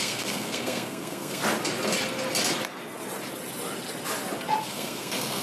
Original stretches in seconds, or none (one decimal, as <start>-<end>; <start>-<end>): 1.4-4.6